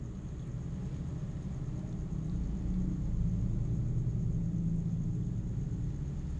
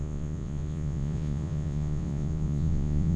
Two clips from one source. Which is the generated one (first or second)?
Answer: second